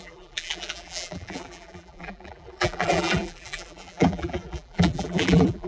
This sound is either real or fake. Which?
fake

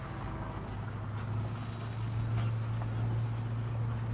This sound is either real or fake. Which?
real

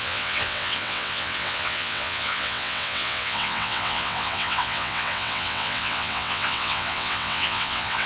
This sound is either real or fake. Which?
fake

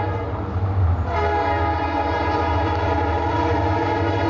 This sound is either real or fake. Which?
real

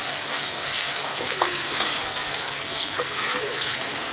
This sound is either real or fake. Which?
fake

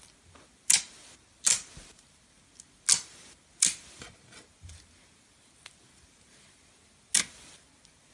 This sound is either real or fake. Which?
real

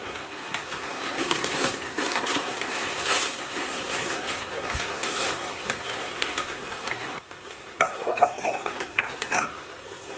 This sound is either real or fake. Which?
fake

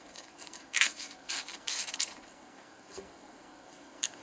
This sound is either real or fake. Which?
fake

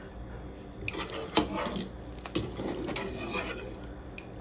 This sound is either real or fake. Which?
real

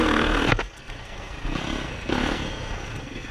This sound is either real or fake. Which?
fake